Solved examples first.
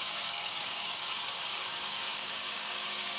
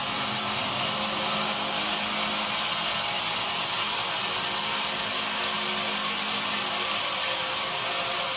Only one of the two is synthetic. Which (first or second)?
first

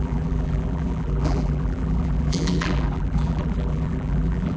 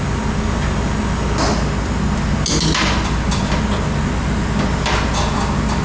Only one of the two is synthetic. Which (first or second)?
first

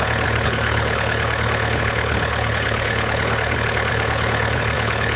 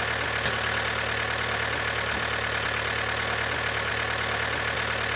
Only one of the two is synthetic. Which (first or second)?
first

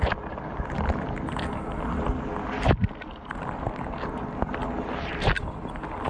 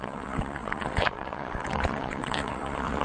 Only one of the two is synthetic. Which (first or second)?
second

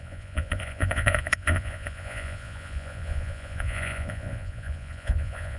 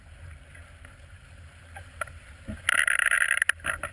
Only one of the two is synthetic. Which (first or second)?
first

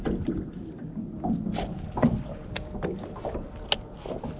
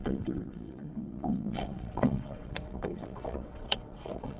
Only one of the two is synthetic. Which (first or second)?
second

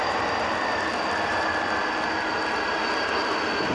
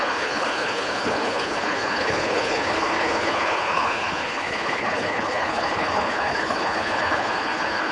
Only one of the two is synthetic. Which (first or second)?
second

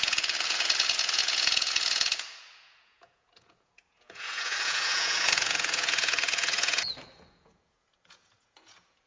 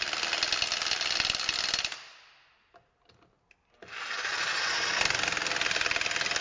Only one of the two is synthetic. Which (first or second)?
first